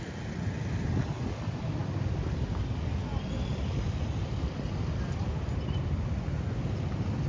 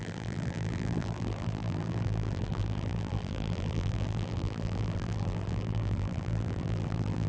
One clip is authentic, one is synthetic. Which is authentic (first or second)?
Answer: first